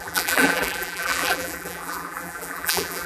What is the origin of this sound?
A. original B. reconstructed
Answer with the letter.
B